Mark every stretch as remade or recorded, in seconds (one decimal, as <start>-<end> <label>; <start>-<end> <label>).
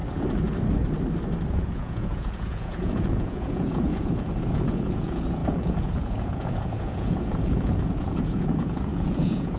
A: 0.0-1.5 recorded; 1.5-9.6 remade